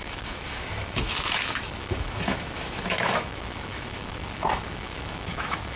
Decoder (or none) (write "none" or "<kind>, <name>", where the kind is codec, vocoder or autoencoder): autoencoder, DAC-VAE